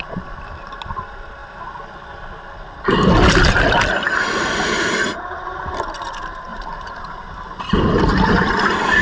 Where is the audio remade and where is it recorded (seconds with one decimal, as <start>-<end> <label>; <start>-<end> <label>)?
0.0-6.5 recorded; 6.5-8.0 remade; 8.0-9.0 recorded